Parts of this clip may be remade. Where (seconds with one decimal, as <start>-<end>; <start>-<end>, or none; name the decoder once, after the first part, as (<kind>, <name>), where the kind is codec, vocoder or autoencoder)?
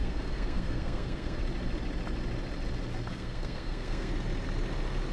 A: 0.0-1.4 (codec, SNAC); 3.1-4.1